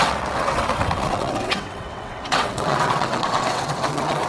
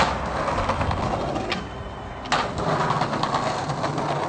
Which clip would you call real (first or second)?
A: second